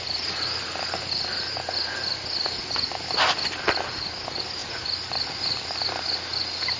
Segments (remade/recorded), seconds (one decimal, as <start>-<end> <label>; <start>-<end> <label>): 0.0-6.8 recorded